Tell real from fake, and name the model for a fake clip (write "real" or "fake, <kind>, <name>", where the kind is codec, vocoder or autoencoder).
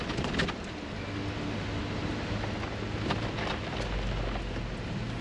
real